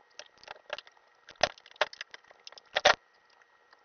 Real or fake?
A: real